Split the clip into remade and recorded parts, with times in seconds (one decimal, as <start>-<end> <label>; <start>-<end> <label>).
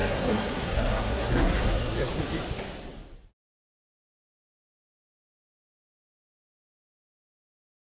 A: 0.0-2.1 remade; 2.1-3.9 recorded; 3.9-7.8 remade